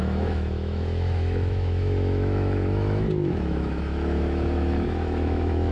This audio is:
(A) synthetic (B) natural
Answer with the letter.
A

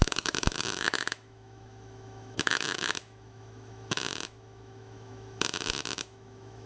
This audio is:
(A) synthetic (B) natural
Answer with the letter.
A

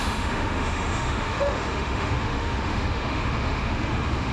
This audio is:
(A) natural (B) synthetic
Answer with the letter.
B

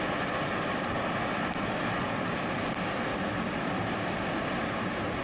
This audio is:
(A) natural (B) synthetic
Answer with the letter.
A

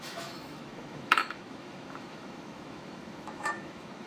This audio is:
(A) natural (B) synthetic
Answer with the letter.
B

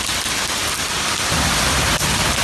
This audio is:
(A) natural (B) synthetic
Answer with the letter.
A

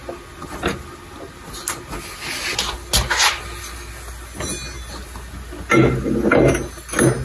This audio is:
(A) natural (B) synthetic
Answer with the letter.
A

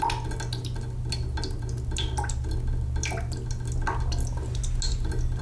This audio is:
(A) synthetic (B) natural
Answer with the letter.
B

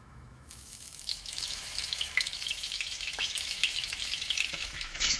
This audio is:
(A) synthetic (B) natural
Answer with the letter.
A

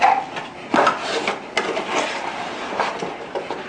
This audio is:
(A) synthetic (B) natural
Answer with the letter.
B